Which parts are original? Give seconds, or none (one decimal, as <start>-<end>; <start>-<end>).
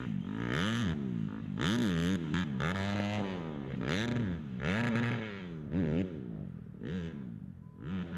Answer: 0.0-4.4; 6.8-8.2